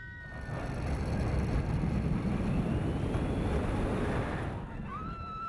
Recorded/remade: recorded